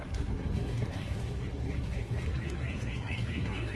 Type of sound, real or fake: fake